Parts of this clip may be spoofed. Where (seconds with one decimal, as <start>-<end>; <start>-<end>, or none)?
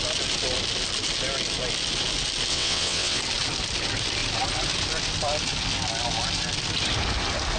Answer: 2.5-3.2